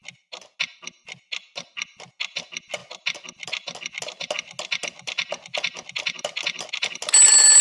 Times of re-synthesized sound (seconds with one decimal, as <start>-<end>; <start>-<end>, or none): none